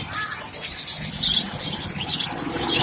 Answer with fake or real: real